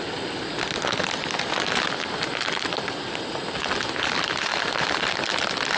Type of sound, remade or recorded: recorded